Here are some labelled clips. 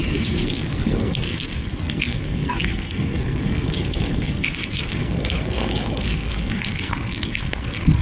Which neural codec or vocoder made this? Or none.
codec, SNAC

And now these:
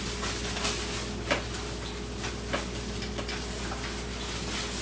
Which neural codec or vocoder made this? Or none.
none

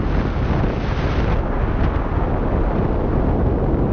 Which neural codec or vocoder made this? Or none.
none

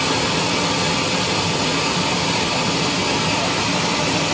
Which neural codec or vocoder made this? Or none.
none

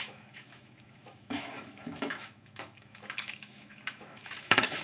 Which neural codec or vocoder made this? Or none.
autoencoder, DAC-VAE